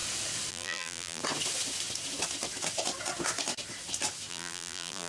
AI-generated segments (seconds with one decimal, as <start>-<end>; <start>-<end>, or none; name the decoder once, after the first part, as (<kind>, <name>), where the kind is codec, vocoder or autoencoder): 0.5-1.2 (vocoder, BigVGAN v2); 4.3-5.1